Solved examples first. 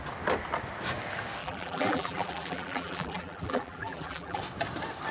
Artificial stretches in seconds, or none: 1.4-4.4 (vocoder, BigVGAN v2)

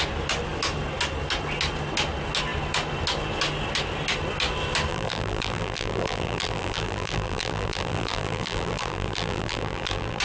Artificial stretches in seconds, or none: 4.9-10.2 (vocoder, BigVGAN v2)

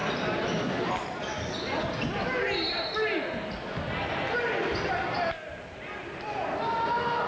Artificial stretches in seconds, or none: none